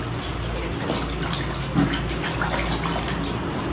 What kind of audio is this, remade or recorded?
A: recorded